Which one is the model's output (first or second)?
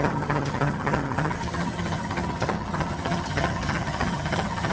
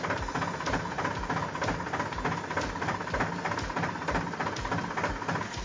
first